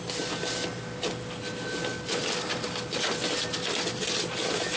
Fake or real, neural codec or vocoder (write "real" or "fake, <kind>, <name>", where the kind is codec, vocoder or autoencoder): real